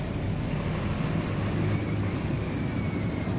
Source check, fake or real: real